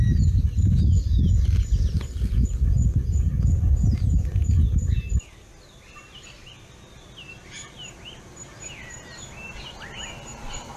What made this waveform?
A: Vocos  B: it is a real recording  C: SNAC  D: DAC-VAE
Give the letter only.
B